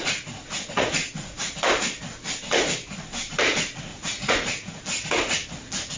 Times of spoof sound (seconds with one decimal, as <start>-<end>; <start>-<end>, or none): 0.0-1.5; 3.9-4.8